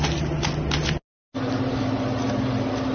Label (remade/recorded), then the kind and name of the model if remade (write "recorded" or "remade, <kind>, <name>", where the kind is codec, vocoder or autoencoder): recorded